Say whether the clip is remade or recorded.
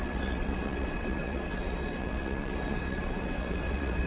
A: remade